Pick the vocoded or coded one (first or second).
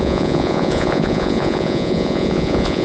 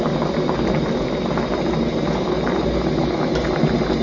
first